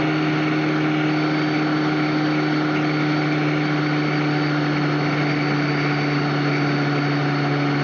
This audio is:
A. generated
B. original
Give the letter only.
B